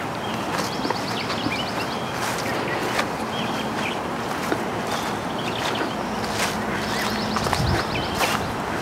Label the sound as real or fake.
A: real